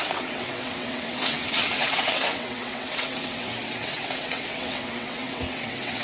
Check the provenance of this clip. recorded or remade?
remade